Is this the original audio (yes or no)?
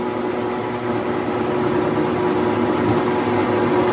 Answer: yes